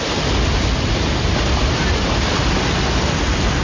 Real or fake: real